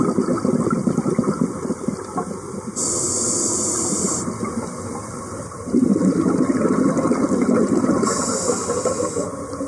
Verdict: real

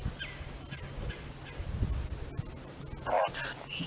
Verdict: real